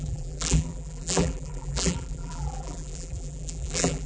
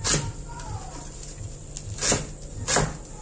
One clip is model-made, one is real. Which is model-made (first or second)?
first